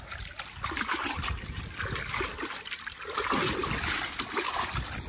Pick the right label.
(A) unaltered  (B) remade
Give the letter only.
A